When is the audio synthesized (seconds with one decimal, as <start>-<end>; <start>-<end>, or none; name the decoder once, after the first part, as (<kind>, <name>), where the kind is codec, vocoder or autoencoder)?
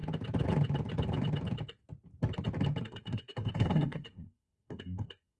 2.8-5.4 (codec, SNAC)